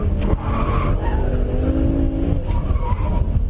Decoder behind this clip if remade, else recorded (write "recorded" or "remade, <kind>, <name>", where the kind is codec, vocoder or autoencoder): recorded